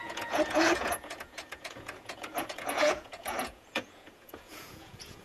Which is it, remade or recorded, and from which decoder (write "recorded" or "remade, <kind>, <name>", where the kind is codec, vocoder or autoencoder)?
remade, vocoder, Vocos